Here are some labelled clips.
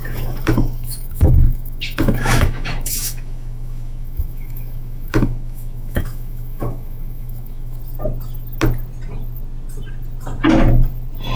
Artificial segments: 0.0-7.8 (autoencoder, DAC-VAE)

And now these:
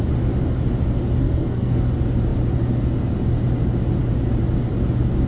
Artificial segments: 1.2-1.8 (codec, SNAC)

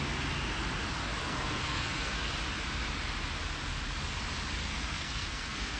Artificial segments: 1.2-2.3 (codec, SNAC); 4.6-5.8

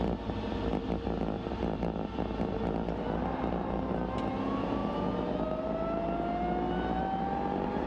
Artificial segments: none

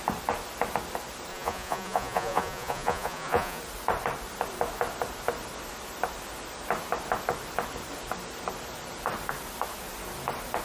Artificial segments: 1.3-3.6 (vocoder, Vocos)

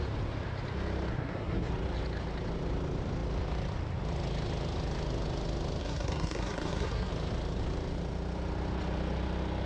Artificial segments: 1.1-1.7 (codec, SNAC); 5.8-7.1